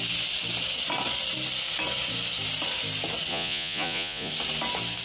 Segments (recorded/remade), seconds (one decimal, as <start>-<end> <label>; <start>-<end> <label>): 0.0-3.3 recorded; 3.3-4.3 remade; 4.3-5.0 recorded